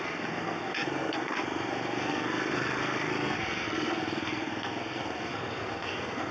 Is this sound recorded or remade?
remade